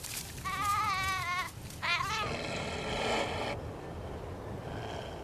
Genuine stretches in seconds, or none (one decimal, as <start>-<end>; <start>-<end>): 0.0-5.2